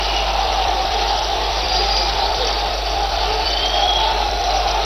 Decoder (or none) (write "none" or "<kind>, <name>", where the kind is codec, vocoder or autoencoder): vocoder, BigVGAN v2